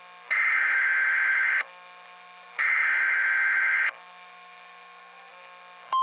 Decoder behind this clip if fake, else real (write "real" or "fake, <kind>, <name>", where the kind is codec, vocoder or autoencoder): fake, autoencoder, DAC-VAE